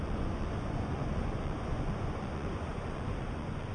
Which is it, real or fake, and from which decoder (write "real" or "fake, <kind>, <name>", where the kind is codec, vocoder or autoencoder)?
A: fake, vocoder, Vocos